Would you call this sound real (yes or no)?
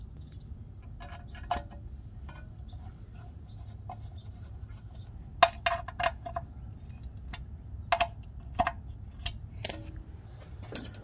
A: yes